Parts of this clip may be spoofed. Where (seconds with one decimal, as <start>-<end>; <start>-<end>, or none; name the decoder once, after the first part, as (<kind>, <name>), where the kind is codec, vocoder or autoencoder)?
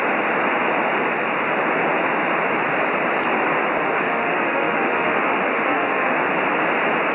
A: 3.8-6.3 (autoencoder, DAC-VAE)